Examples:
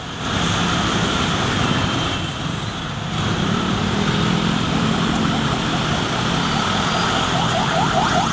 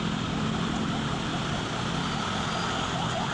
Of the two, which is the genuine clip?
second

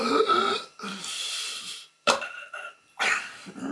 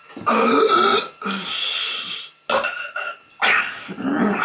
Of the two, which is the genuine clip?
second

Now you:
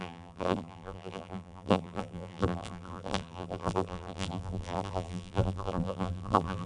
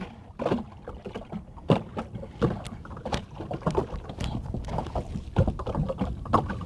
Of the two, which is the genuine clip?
second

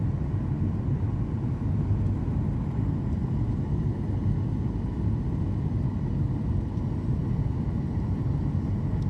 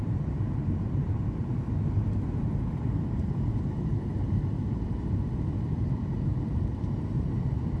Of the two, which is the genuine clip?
first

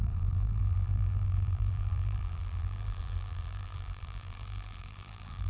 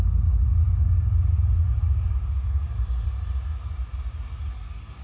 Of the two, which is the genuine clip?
second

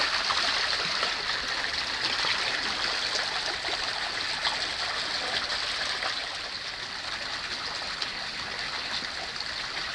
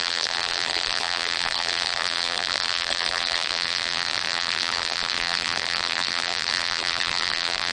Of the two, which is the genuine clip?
first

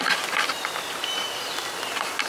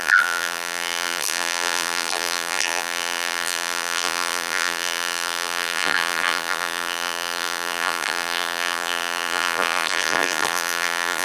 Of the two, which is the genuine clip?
first